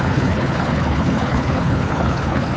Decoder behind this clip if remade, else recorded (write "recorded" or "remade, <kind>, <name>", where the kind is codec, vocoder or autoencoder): remade, codec, HILCodec